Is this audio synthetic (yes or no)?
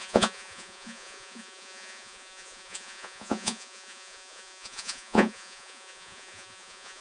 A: yes